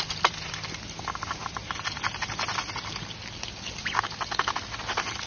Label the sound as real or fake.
real